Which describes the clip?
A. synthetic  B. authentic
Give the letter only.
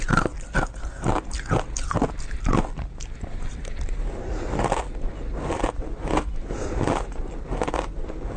B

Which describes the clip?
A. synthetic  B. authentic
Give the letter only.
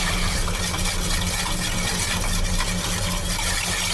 B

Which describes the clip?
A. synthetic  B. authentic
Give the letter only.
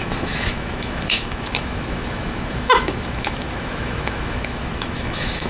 A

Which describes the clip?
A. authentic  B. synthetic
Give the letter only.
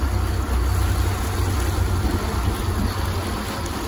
A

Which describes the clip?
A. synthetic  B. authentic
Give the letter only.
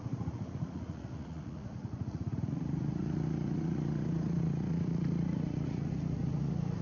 A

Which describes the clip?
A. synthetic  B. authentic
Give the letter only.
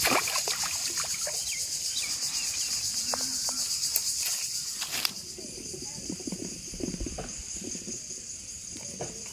B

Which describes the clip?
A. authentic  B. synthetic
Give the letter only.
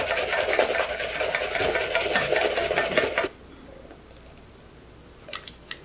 A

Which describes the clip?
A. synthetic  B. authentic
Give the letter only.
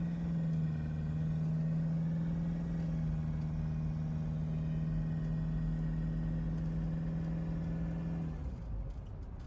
B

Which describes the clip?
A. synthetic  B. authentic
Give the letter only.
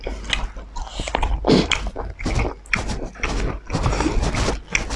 B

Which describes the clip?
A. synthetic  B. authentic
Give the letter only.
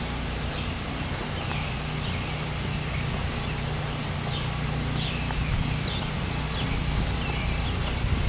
B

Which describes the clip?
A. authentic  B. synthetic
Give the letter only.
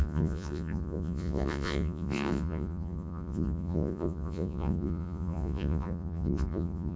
B